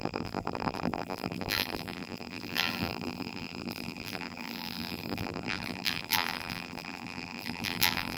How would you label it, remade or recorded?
remade